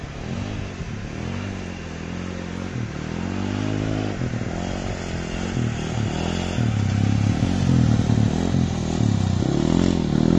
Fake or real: real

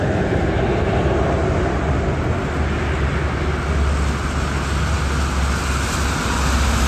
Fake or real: real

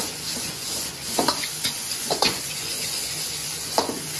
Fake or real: fake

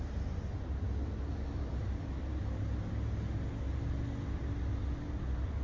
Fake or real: real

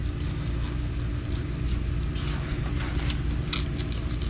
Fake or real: real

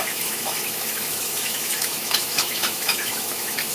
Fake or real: fake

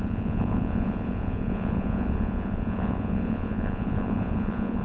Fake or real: fake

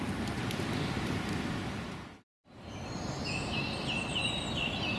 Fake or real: real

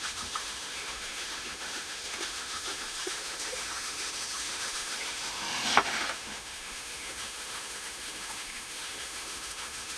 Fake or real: fake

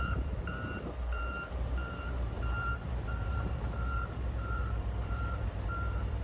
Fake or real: fake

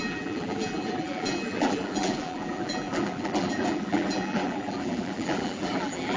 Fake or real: fake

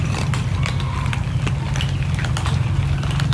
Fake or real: real